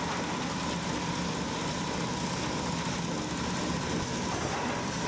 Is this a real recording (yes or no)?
yes